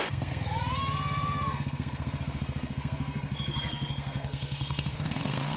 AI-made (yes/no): yes